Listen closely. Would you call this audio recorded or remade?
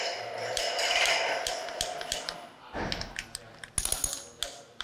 recorded